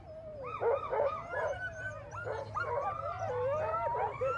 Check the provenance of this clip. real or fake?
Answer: fake